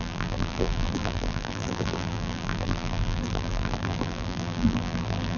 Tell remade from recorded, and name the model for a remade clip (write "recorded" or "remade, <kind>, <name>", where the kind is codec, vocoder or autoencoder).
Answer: remade, vocoder, BigVGAN v2